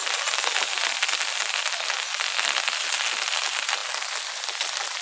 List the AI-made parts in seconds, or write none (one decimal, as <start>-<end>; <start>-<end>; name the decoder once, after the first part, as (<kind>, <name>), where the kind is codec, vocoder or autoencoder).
none

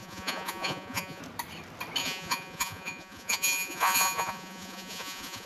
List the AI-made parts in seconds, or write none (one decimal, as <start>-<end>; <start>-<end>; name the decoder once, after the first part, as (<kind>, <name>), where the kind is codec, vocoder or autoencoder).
0.0-1.2 (vocoder, Vocos); 2.0-5.5

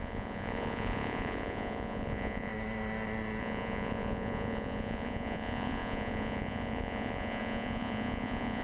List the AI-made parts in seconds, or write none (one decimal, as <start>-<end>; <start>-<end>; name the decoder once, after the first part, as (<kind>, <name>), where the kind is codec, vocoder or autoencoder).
0.0-2.5 (vocoder, Vocos); 3.4-8.6

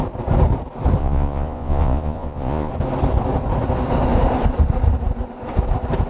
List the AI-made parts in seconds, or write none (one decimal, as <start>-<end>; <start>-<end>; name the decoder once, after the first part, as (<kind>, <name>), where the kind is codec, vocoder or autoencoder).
1.0-2.7 (vocoder, Vocos)

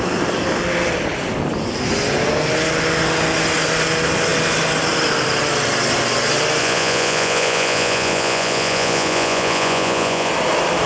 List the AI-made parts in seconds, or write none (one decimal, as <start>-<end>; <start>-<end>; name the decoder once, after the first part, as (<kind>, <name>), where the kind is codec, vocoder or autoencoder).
6.6-10.3 (vocoder, Vocos)

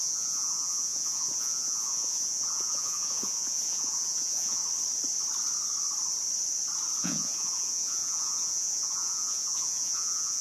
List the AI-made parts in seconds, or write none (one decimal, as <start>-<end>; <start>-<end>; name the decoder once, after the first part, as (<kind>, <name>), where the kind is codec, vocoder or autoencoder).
0.0-4.6 (vocoder, Vocos); 7.0-10.4

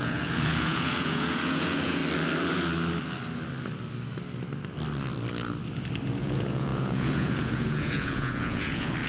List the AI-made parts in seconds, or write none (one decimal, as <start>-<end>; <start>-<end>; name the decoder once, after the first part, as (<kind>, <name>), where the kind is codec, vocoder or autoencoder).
0.0-2.0 (vocoder, Vocos); 6.2-9.1